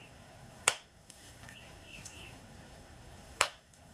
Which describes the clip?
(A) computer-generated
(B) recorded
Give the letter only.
A